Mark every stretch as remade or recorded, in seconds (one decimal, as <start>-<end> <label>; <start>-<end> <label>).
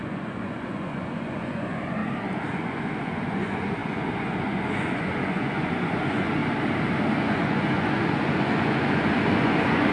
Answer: 0.0-2.0 remade; 2.0-2.5 recorded; 2.5-6.4 remade; 6.4-7.2 recorded; 7.2-9.9 remade